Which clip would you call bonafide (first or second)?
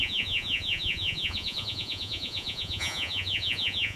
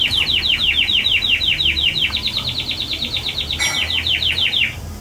second